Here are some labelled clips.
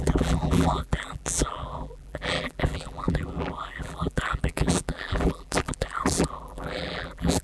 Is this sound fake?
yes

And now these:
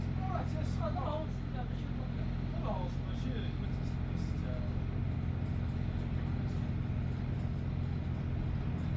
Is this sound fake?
no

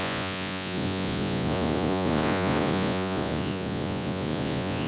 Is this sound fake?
yes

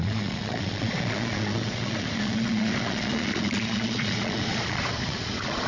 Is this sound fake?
yes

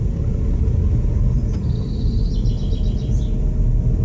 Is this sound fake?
no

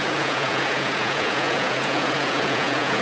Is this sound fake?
yes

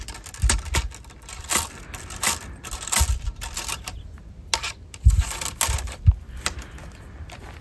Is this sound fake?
no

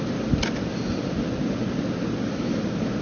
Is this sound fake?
no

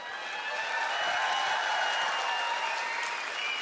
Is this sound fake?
no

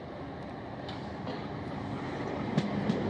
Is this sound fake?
no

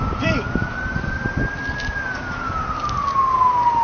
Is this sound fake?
no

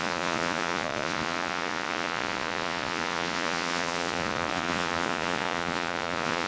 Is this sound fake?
yes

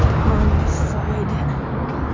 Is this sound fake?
no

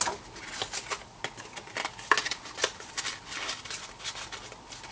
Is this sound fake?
no